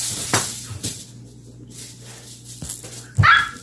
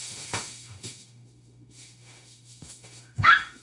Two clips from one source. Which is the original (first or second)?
first